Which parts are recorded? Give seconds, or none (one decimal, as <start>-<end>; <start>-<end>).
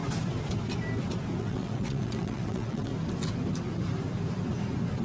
0.0-1.4; 2.9-5.0